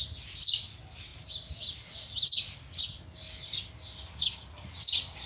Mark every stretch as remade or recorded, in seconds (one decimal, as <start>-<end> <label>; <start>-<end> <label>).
0.0-5.3 recorded